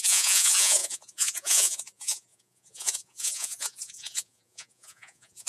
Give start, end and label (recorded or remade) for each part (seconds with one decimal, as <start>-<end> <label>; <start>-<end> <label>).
0.0-5.5 remade